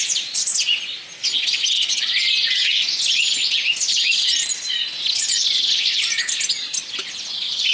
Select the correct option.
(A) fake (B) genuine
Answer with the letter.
B